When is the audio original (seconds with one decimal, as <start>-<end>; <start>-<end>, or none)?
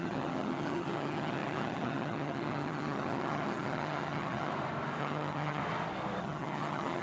4.5-5.0; 5.6-6.2